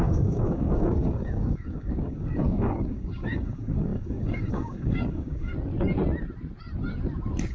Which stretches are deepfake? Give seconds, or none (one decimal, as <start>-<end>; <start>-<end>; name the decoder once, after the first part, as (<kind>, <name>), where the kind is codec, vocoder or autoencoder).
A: 0.0-5.5 (codec, DAC)